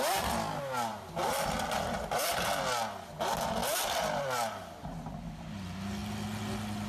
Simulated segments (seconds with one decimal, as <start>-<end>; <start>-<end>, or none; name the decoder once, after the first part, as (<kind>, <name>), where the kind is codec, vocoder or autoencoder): 0.9-2.6 (vocoder, BigVGAN v2); 3.6-4.6